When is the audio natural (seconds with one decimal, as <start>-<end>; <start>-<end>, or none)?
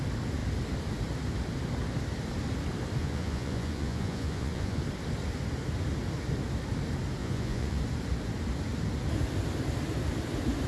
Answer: 0.0-3.0; 4.8-7.2; 7.8-10.7